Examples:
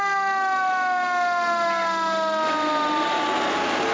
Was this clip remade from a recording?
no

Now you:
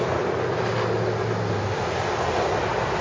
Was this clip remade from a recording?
no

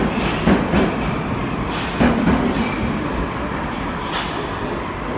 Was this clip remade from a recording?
no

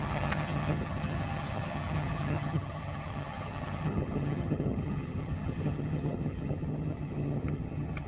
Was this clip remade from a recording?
yes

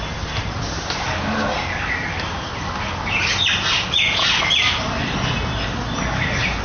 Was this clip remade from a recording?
no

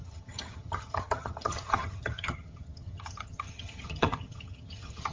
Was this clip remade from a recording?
yes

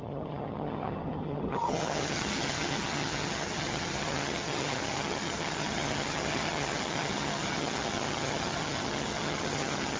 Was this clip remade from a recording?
yes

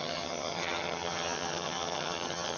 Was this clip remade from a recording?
yes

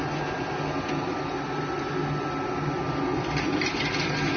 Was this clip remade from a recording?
no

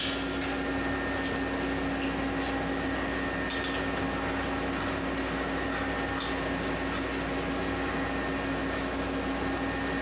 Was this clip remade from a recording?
no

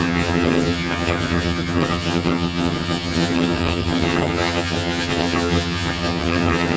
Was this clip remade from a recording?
yes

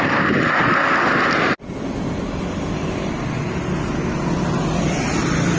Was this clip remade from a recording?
no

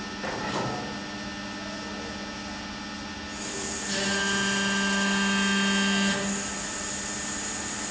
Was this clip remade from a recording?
no